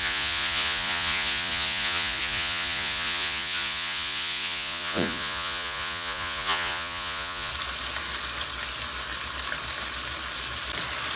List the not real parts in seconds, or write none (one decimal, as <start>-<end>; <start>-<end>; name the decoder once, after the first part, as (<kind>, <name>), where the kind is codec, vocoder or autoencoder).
0.0-7.5 (vocoder, Vocos)